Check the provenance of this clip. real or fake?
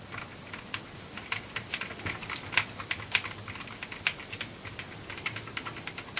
real